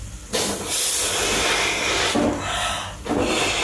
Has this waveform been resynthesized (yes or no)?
no